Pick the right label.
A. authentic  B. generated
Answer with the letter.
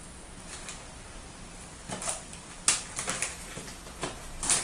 A